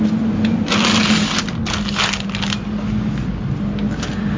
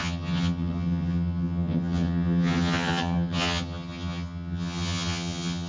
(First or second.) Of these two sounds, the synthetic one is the second